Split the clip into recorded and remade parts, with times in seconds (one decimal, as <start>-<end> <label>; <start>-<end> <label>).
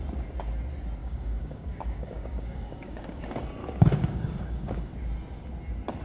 0.0-1.0 recorded; 1.0-3.2 remade; 3.2-3.6 recorded; 3.6-4.9 remade; 4.9-6.0 recorded